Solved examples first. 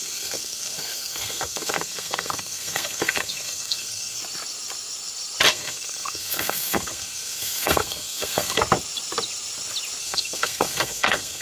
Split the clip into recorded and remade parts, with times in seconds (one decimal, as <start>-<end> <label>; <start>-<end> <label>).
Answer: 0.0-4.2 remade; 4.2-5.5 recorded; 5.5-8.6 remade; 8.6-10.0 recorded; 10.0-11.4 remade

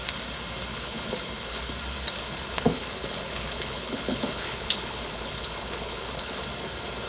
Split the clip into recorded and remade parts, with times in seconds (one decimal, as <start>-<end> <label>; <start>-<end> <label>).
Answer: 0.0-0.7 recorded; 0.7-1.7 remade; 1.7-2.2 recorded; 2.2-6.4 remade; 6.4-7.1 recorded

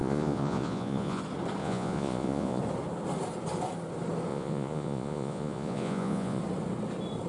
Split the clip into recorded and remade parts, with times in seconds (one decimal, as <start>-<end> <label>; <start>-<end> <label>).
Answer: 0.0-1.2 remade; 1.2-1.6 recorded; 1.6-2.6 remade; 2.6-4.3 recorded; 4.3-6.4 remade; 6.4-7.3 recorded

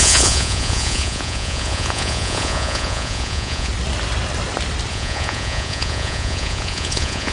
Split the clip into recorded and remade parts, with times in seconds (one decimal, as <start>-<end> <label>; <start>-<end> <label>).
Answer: 0.0-3.7 remade; 3.7-4.9 recorded; 4.9-7.3 remade

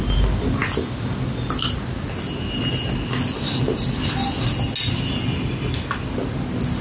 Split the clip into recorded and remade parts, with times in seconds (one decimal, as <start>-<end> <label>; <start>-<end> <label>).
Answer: 0.0-6.8 recorded